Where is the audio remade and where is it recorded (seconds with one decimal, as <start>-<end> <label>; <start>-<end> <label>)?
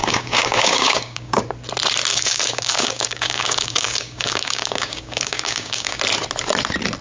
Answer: 0.0-1.4 remade; 1.4-2.1 recorded; 2.1-6.0 remade; 6.0-7.0 recorded